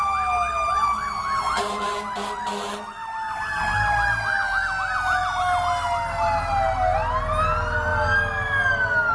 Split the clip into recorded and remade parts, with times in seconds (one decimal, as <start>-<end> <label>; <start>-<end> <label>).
0.0-9.1 recorded